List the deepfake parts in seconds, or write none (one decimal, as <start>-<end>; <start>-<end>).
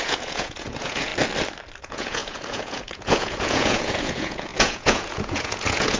0.0-1.1; 1.8-6.0